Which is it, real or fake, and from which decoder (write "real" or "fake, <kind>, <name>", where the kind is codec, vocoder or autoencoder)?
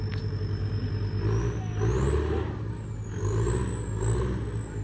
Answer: real